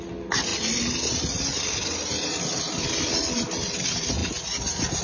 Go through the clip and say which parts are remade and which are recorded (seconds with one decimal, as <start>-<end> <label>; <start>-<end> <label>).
0.0-5.0 recorded